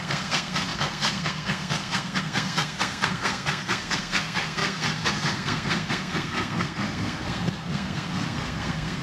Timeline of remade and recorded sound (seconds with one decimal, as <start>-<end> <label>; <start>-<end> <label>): 0.0-9.0 remade